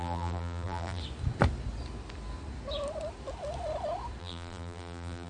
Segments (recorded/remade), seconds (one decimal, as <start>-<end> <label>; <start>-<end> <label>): 0.0-1.0 remade; 1.0-4.2 recorded; 4.2-5.3 remade